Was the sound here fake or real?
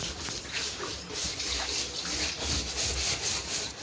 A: real